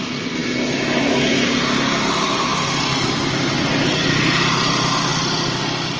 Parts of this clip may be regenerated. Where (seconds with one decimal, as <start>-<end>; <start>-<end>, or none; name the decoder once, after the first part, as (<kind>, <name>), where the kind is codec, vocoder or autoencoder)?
none